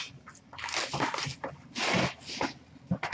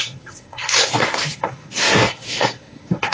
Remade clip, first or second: second